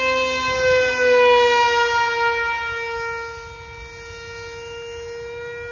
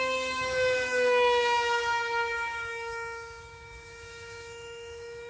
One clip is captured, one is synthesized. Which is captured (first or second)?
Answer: first